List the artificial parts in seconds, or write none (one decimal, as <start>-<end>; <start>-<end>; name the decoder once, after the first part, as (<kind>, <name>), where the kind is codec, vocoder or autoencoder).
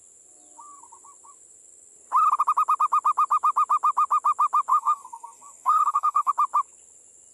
4.7-6.3 (codec, SNAC)